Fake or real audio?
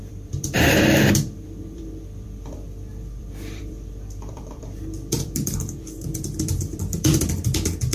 fake